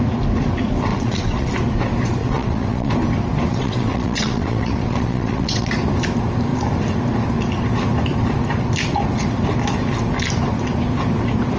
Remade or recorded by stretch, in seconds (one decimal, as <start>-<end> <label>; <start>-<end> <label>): 0.0-0.9 recorded; 0.9-1.5 remade; 1.5-2.2 recorded; 2.2-2.9 remade; 2.9-3.5 recorded; 3.5-5.7 remade; 5.7-11.6 recorded